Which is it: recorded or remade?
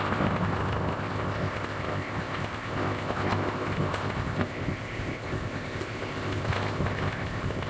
remade